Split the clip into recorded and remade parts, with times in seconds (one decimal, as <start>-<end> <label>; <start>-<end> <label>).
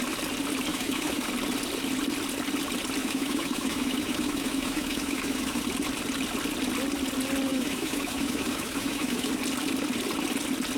0.0-0.7 recorded; 0.7-1.3 remade; 1.3-3.0 recorded; 3.0-5.6 remade; 5.6-7.5 recorded; 7.5-9.3 remade; 9.3-10.8 recorded